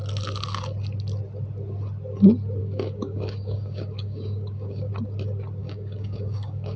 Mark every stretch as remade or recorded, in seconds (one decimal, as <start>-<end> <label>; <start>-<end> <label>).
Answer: 0.0-2.6 recorded; 2.6-4.9 remade; 4.9-5.6 recorded; 5.6-6.8 remade